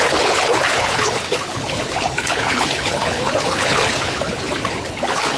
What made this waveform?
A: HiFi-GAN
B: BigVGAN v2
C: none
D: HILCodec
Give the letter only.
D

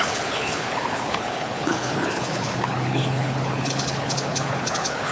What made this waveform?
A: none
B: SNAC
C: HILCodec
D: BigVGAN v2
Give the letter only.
C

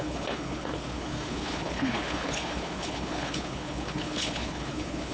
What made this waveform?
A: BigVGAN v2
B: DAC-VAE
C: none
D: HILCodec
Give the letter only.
D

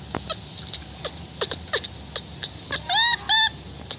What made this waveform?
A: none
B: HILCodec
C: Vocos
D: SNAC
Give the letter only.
A